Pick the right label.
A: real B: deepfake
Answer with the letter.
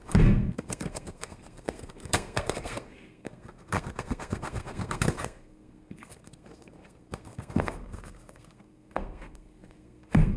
B